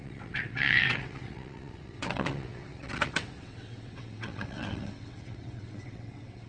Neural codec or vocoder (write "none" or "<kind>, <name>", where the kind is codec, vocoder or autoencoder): vocoder, WaveNeXt